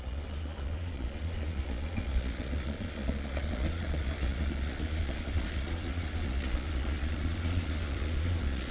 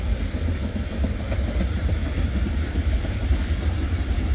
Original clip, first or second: second